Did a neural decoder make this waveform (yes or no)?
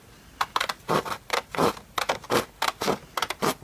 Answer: no